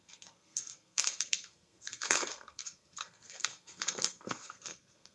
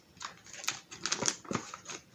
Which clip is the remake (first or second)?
first